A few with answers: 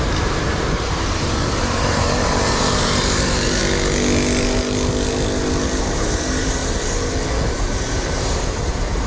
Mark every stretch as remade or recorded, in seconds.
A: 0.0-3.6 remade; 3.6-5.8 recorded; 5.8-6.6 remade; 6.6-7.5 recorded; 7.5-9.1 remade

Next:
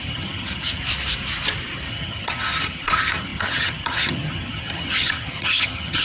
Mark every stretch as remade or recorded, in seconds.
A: 0.0-0.8 remade; 0.8-1.9 recorded; 1.9-6.0 remade

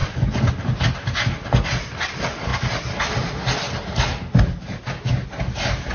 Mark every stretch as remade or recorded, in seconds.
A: 0.0-5.9 recorded

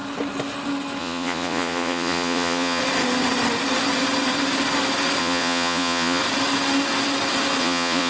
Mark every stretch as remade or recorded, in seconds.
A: 0.0-1.0 recorded; 1.0-2.8 remade; 2.8-5.2 recorded; 5.2-6.2 remade; 6.2-7.6 recorded; 7.6-8.1 remade

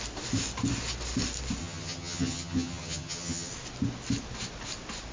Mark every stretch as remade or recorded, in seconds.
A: 0.0-1.6 recorded; 1.6-3.5 remade; 3.5-5.1 recorded

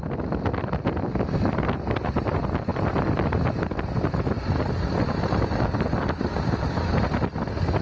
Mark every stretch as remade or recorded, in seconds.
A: 0.0-7.8 recorded